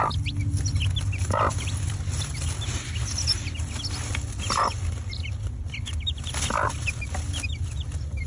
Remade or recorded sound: recorded